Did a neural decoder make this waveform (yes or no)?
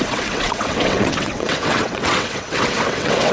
yes